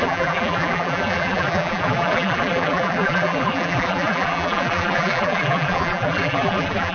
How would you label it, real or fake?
fake